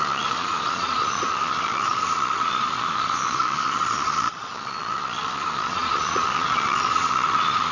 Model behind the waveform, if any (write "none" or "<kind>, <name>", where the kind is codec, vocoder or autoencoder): vocoder, Vocos